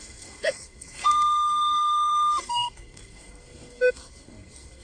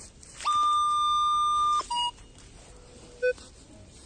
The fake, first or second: first